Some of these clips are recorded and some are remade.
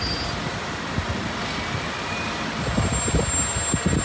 recorded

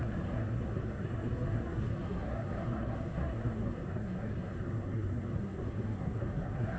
remade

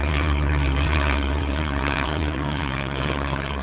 remade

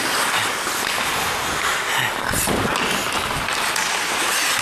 recorded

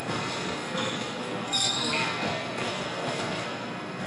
remade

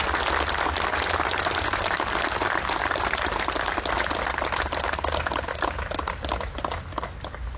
recorded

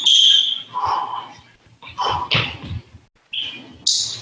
recorded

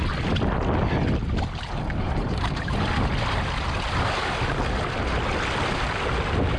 recorded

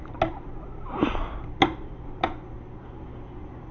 recorded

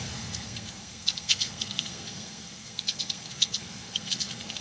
remade